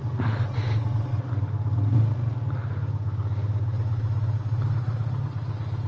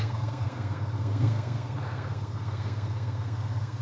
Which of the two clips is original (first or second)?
first